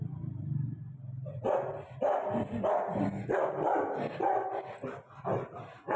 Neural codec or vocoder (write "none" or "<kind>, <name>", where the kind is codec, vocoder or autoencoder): none